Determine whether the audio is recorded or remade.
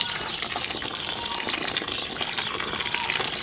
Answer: recorded